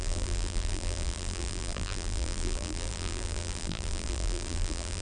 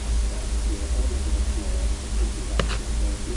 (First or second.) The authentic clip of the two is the second